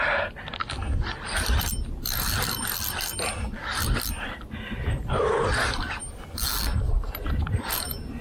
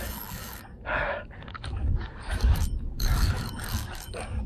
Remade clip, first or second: second